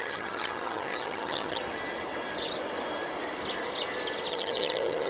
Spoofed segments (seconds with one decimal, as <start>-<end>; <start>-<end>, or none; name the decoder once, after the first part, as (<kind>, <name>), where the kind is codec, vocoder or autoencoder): 0.0-1.6 (vocoder, HiFi-GAN); 4.3-5.1